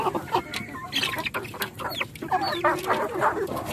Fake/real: real